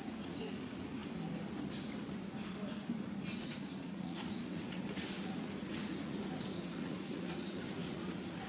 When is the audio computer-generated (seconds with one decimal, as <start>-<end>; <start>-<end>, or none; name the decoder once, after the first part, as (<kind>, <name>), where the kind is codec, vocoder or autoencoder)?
0.0-1.0 (vocoder, Vocos); 3.3-8.5